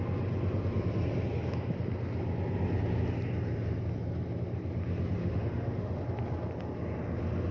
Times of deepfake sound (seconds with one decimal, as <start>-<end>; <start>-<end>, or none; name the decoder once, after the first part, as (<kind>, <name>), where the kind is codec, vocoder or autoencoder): 5.2-6.0 (autoencoder, DAC-VAE)